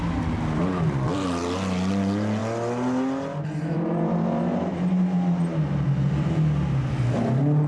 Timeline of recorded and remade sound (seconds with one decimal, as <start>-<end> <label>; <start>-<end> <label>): 0.0-7.7 recorded